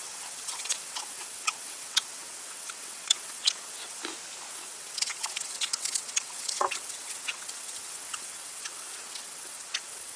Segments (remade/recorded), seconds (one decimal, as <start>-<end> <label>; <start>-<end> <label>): 0.0-4.0 remade; 4.0-4.5 recorded; 4.5-10.2 remade